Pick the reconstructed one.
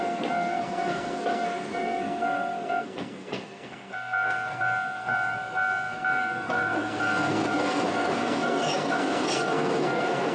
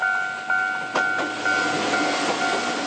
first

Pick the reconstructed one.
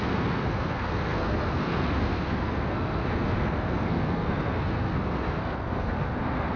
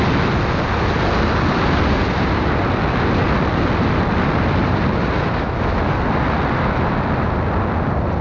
first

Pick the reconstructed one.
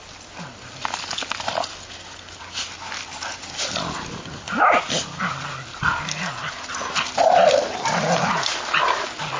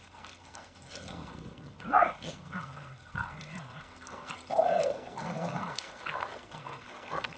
second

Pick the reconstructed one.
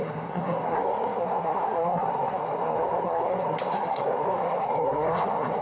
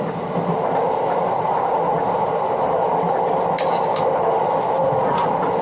first